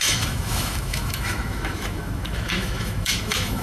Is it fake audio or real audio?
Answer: fake